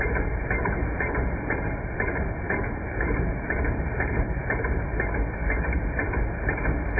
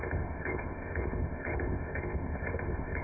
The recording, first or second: first